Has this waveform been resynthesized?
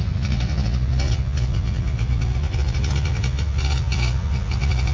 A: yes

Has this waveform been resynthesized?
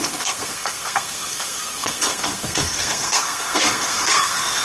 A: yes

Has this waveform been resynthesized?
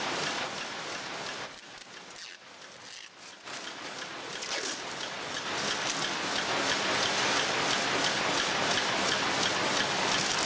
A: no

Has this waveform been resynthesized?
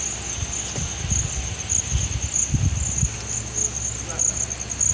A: no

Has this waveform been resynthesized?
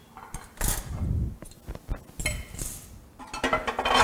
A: no